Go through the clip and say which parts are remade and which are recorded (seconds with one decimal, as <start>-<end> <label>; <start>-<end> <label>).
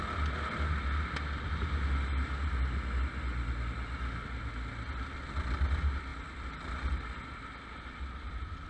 0.0-8.7 recorded